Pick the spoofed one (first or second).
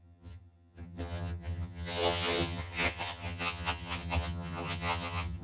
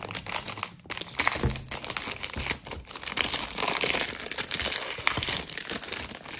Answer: first